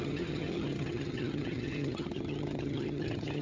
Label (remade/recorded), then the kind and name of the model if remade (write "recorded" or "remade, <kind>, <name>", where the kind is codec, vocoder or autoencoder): remade, vocoder, HiFi-GAN